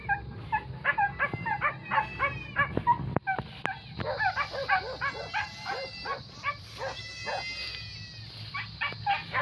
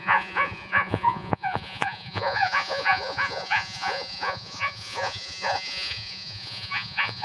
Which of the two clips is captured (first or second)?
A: first